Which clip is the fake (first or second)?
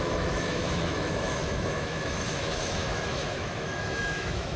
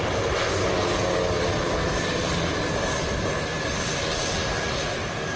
first